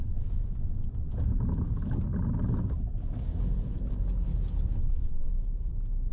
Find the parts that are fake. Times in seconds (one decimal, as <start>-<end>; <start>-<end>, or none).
0.0-1.1; 4.8-5.3